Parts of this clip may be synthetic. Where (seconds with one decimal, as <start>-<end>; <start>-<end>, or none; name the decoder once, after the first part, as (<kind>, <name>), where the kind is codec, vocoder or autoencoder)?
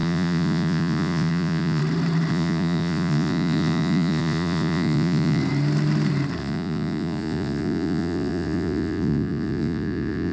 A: 0.0-1.8 (vocoder, Vocos); 2.3-5.4; 6.4-10.3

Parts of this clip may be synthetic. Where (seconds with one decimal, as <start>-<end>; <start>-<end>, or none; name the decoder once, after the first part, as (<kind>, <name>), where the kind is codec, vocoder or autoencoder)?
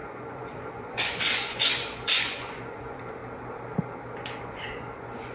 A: 0.0-3.2 (vocoder, Vocos); 4.4-5.3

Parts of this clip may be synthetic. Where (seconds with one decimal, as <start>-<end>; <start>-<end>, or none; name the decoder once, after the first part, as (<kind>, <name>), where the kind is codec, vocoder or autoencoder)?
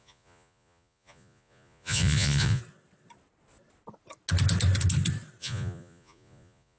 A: 0.0-2.6 (vocoder, Vocos); 5.4-6.8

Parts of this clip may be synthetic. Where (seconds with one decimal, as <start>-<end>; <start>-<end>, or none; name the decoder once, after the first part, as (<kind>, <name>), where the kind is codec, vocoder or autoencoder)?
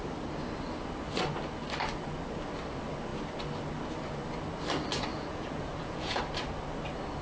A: 5.1-6.2 (vocoder, Vocos)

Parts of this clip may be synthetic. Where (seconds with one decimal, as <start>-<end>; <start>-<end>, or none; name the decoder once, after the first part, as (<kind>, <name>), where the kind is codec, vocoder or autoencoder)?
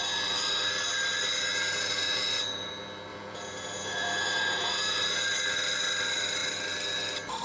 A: 1.5-2.7 (vocoder, Vocos); 3.1-5.2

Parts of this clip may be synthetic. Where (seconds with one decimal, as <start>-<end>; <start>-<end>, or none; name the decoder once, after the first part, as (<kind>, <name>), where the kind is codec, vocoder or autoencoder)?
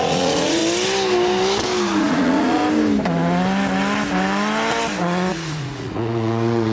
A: 0.0-0.6 (vocoder, Vocos); 2.0-2.6; 5.3-6.7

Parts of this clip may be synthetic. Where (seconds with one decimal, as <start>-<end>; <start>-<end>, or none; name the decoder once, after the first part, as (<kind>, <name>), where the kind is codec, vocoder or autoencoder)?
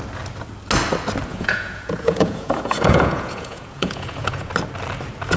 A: 1.3-4.5 (vocoder, Vocos)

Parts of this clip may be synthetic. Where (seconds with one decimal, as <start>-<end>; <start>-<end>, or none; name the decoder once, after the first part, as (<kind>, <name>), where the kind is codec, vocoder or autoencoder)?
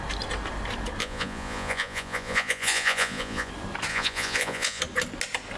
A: 1.0-3.5 (vocoder, Vocos); 3.9-4.8